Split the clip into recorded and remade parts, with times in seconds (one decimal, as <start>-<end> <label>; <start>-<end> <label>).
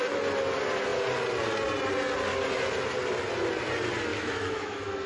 0.0-4.1 recorded; 4.1-5.1 remade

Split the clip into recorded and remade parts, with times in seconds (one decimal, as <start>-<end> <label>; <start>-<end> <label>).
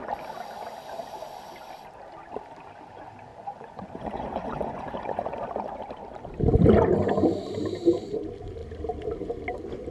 0.0-3.3 recorded; 3.3-5.4 remade; 5.4-9.9 recorded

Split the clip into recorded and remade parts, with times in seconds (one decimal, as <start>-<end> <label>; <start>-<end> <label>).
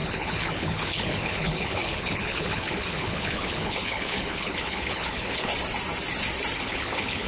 0.0-5.5 remade; 5.5-6.6 recorded; 6.6-7.3 remade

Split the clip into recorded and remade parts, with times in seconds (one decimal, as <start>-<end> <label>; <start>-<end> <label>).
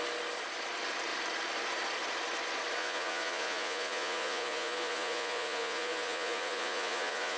0.0-2.8 recorded; 2.8-7.4 remade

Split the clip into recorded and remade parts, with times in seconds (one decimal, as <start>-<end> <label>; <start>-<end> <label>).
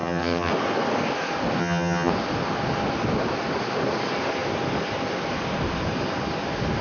0.0-0.5 remade; 0.5-1.6 recorded; 1.6-2.1 remade; 2.1-6.8 recorded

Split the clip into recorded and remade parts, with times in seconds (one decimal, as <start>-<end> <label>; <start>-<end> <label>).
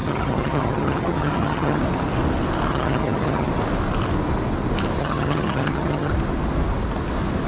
0.0-1.8 remade; 1.8-2.7 recorded; 2.7-3.5 remade; 3.5-5.0 recorded; 5.0-6.1 remade; 6.1-7.5 recorded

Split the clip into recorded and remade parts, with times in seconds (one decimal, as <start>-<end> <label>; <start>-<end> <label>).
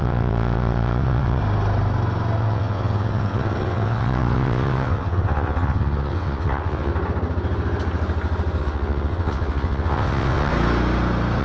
0.0-1.4 remade; 1.4-2.4 recorded; 2.4-6.9 remade; 6.9-8.6 recorded; 8.6-10.5 remade; 10.5-11.4 recorded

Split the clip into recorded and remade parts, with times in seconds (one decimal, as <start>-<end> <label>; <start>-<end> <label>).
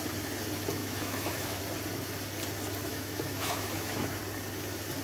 0.0-0.8 recorded; 0.8-1.6 remade; 1.6-2.9 recorded; 2.9-4.2 remade; 4.2-5.0 recorded